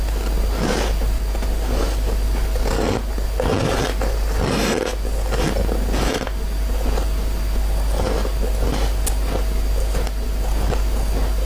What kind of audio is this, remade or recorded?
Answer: recorded